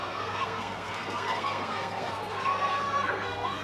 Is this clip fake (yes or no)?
yes